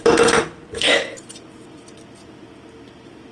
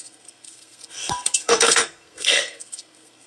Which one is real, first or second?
first